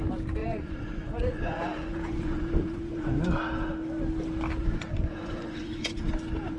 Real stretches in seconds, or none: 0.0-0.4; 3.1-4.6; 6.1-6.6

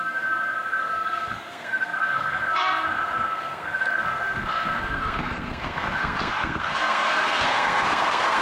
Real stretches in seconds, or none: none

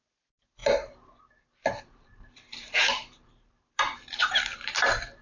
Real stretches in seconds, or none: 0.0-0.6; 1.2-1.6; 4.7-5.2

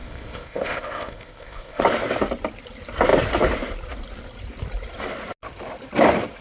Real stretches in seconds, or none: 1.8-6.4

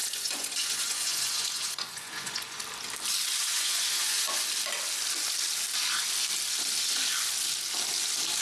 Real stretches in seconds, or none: 2.6-3.5; 4.4-8.4

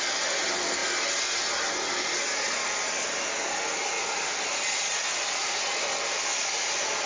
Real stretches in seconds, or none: 0.0-7.1

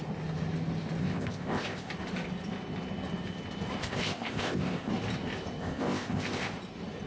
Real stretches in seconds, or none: 0.0-1.0; 1.9-3.8; 4.9-5.6; 6.5-7.1

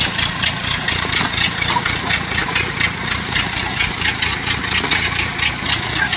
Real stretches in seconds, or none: none